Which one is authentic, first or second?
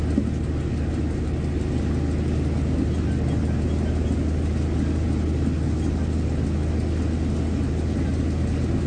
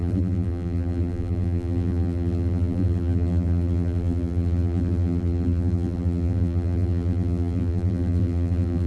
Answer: first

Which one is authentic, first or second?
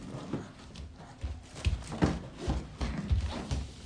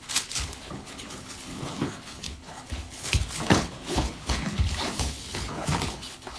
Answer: first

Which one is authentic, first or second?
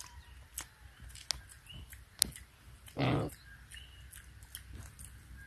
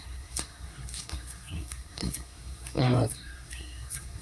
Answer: first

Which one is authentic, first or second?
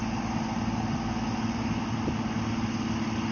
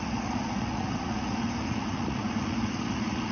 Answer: first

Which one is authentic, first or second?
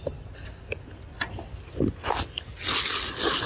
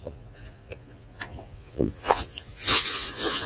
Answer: first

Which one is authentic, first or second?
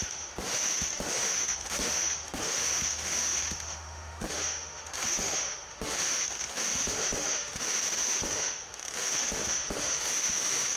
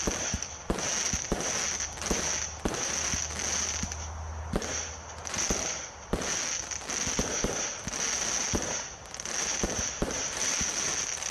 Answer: second